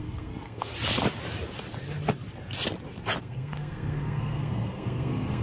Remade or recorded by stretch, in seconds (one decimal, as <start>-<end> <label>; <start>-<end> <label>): 0.0-0.7 remade; 0.7-3.2 recorded; 3.2-5.4 remade